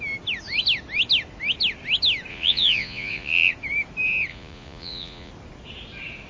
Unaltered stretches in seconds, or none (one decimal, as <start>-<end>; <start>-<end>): 0.0-2.3; 3.5-4.3; 5.3-6.3